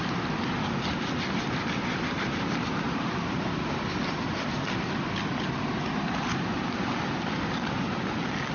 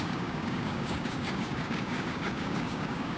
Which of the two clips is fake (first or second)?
second